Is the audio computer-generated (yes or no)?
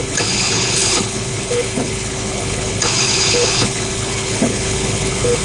yes